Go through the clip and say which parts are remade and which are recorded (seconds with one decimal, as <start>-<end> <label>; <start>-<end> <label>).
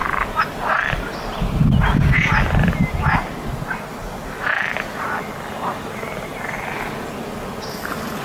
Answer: 0.0-8.2 recorded